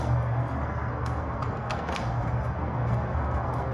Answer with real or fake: fake